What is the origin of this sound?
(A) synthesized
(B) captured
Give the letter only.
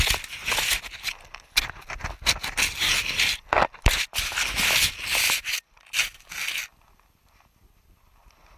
B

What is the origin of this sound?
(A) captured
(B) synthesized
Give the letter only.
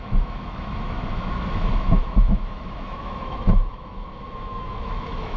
B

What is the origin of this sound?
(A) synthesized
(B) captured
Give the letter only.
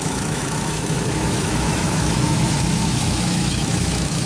A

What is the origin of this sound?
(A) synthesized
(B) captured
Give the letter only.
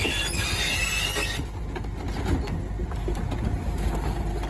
B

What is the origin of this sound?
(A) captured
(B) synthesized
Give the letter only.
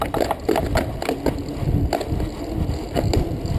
A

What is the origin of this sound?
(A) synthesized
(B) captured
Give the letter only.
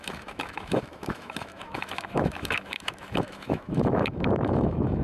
A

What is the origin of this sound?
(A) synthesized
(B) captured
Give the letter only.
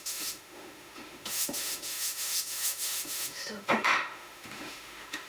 A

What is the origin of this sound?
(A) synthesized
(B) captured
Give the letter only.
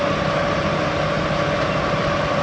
B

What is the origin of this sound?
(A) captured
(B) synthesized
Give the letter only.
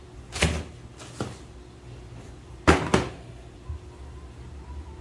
A